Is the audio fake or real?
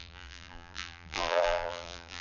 fake